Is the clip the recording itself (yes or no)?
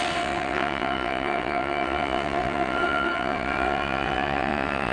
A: no